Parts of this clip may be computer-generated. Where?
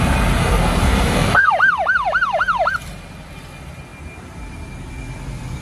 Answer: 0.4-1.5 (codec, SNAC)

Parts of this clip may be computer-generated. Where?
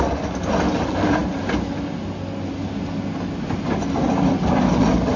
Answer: none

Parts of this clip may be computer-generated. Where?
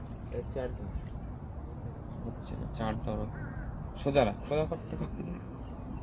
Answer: 4.8-5.6 (codec, SNAC)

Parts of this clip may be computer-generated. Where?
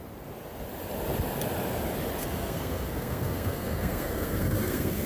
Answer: 2.2-5.1 (codec, SNAC)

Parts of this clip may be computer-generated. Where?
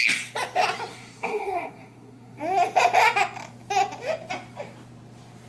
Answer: 0.9-2.4 (codec, SNAC)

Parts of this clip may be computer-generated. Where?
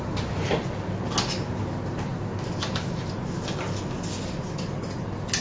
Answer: none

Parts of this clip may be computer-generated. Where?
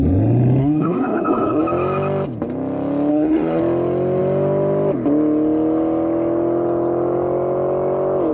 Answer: 0.6-1.6 (codec, SNAC); 3.1-3.6